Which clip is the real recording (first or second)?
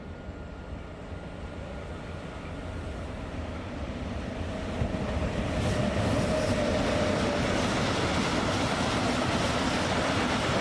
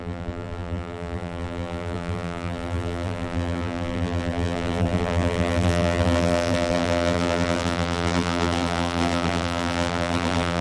first